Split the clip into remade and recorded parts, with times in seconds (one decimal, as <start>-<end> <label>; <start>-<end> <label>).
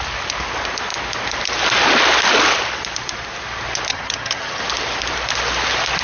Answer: 0.0-3.9 recorded; 3.9-4.6 remade; 4.6-6.0 recorded